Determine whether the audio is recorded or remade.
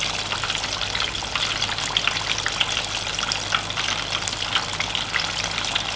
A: recorded